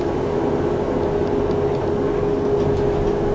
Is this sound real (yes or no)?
yes